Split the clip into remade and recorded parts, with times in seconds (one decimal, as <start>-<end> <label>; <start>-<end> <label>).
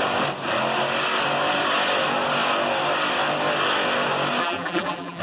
0.0-4.4 recorded; 4.4-5.2 remade